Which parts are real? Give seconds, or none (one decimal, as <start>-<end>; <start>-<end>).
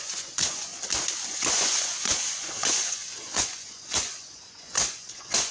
0.7-1.3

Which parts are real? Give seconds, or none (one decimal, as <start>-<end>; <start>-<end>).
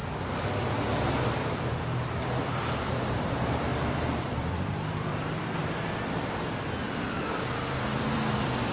3.7-4.3; 5.6-6.2